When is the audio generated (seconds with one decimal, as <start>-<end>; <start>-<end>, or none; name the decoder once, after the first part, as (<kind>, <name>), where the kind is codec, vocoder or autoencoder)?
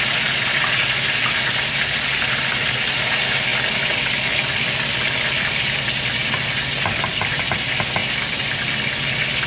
none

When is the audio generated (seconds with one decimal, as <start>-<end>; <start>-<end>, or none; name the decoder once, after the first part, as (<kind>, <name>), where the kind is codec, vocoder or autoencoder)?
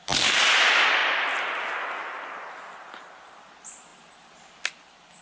none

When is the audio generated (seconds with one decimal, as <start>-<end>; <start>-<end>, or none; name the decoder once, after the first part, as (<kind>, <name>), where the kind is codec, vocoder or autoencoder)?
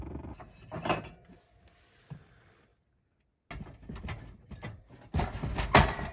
none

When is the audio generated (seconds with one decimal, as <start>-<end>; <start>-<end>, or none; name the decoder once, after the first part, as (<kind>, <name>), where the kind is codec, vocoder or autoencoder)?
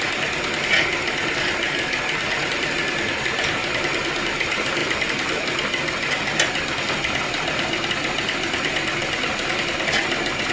none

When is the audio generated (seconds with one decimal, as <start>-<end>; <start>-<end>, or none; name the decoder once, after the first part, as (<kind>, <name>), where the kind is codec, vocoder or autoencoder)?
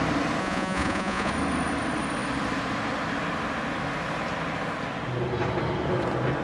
0.4-1.3 (vocoder, Vocos)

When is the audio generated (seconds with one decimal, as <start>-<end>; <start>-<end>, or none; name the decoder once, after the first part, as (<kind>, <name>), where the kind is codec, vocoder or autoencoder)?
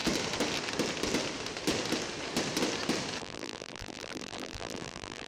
3.2-5.3 (vocoder, BigVGAN v2)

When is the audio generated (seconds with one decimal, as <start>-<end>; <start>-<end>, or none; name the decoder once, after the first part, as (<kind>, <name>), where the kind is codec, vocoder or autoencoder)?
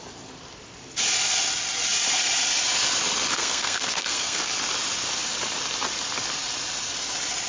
3.3-4.5 (codec, SNAC)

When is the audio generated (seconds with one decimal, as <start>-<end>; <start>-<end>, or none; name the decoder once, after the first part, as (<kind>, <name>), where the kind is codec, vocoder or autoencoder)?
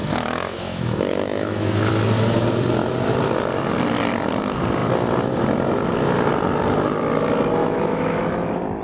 0.0-1.9 (autoencoder, DAC-VAE); 7.6-8.2